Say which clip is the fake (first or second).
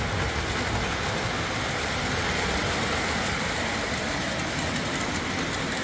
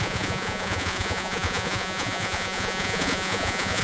second